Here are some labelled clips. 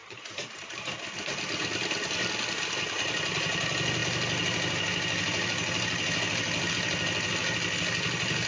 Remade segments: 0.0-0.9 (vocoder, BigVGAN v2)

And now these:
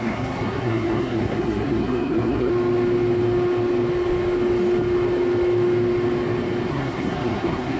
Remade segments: 0.0-2.5 (codec, SNAC); 6.7-7.8

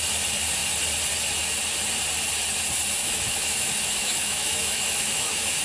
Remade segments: 3.0-5.6 (autoencoder, DAC-VAE)

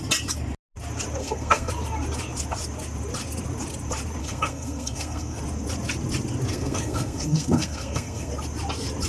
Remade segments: 1.2-1.7 (codec, SNAC); 4.2-5.4; 6.5-8.3

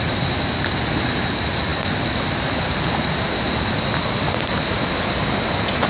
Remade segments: none

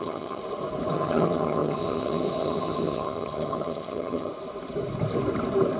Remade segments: 0.0-0.4 (vocoder, HiFi-GAN); 0.9-4.3

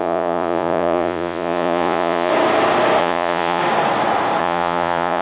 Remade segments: 0.0-2.3 (vocoder, Vocos); 3.0-3.6; 4.4-5.2